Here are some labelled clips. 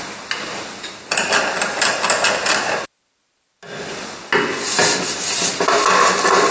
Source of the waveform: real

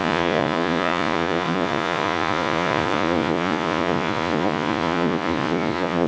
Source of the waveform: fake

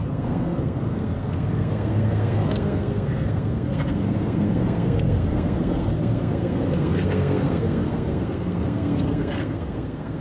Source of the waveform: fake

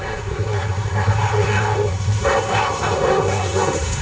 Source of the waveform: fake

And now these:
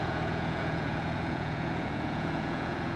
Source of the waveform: fake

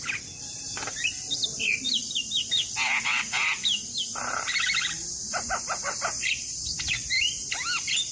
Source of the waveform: fake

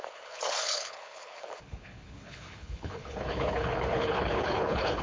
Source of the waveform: fake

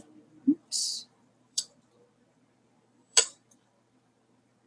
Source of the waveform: fake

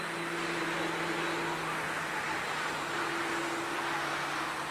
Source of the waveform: real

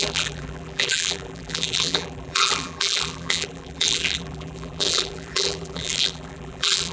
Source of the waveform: fake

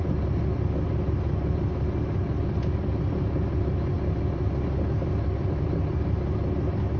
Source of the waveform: real